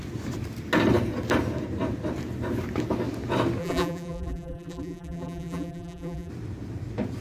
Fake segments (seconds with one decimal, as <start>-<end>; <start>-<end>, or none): 3.6-6.3